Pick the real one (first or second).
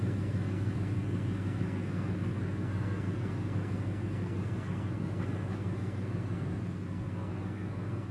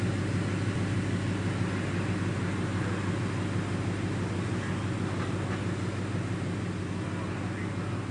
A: second